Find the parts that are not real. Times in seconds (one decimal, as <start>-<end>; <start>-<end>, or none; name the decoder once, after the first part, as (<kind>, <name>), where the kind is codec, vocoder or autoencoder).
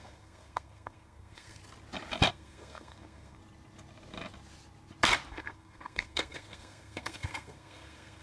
0.0-1.6 (codec, SNAC); 2.3-3.4; 5.3-8.2